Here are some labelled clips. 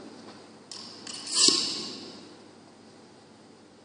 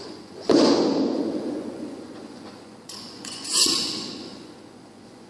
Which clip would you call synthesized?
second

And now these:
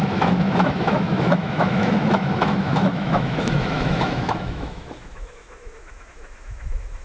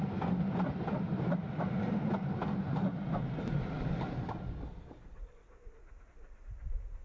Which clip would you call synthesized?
first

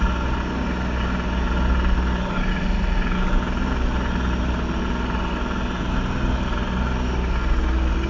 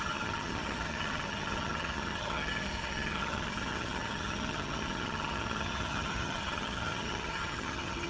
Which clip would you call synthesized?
second